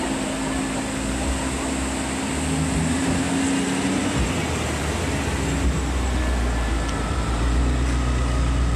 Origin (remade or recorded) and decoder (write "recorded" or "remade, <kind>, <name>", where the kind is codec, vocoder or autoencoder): recorded